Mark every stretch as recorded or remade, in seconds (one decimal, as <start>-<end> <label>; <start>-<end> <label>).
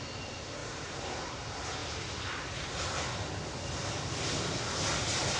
0.0-0.6 recorded; 0.6-1.4 remade; 1.4-5.4 recorded